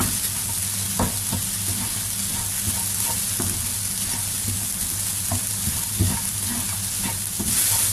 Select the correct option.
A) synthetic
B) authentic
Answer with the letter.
B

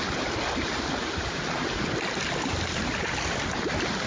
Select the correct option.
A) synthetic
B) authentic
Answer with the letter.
B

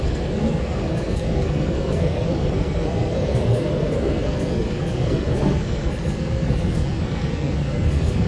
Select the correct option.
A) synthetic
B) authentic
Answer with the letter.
A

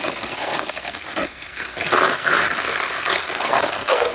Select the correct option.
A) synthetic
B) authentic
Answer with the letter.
A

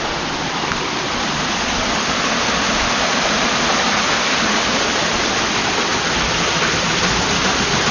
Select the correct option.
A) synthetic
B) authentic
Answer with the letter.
B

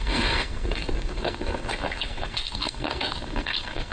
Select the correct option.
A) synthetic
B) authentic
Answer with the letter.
A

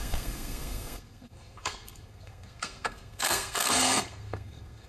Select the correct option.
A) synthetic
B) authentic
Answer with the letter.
A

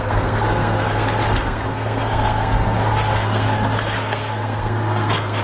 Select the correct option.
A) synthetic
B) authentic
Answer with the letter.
A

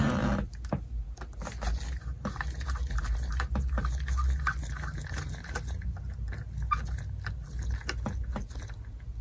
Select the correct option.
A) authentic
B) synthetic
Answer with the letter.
A